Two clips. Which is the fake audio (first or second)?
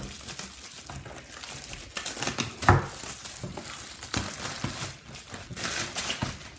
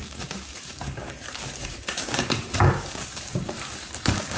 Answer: second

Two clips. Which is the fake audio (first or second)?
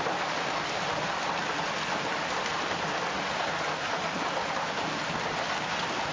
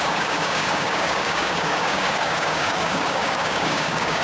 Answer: second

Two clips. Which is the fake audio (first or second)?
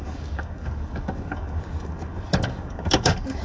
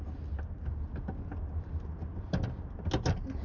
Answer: first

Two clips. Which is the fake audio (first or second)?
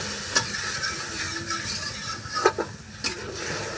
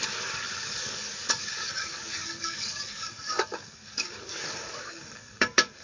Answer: second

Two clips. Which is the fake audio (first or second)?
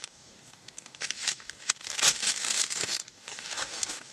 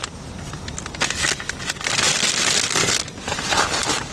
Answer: first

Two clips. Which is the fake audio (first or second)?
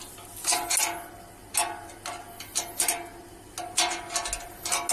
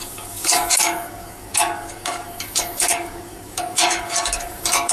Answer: second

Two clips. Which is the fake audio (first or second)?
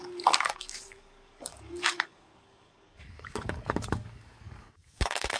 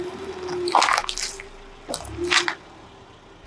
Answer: first